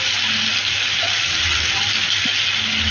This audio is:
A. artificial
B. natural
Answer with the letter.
B